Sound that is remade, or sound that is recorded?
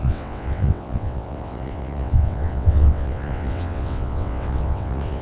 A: remade